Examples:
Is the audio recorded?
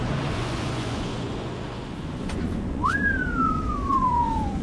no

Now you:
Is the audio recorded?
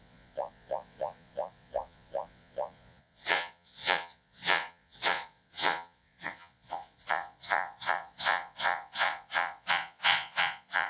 no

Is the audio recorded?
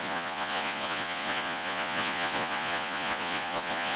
no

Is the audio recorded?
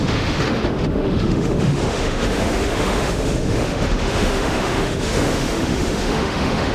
no